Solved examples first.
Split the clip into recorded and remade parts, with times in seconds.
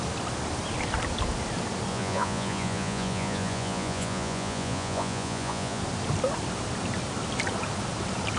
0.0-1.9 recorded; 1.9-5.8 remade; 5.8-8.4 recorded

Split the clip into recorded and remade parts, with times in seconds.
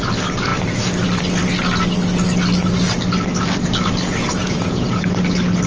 0.0-4.4 recorded; 4.4-5.1 remade; 5.1-5.7 recorded